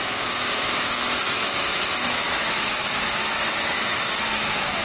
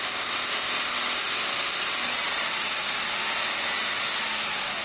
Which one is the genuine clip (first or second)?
second